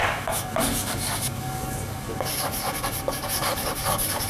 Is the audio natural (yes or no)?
no